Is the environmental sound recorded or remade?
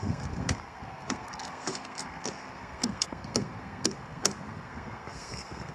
remade